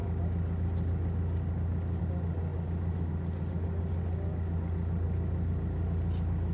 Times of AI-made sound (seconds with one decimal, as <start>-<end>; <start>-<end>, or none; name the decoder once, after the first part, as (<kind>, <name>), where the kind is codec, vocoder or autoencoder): none